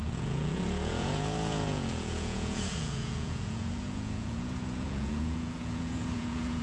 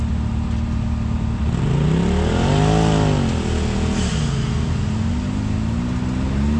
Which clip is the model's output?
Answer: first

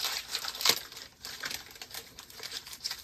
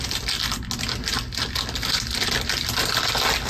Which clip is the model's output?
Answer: first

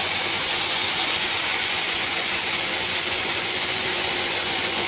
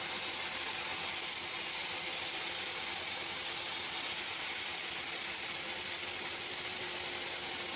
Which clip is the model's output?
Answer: first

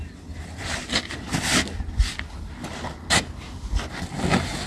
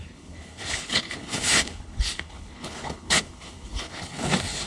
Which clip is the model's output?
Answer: second